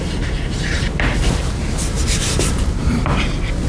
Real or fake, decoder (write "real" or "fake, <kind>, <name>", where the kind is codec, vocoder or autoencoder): fake, vocoder, BigVGAN v2